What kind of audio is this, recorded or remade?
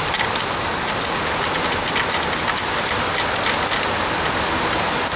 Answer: recorded